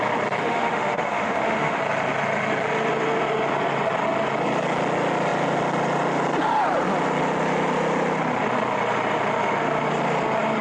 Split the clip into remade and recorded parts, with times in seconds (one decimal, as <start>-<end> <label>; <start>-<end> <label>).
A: 0.0-0.4 recorded; 0.4-1.8 remade; 1.8-10.6 recorded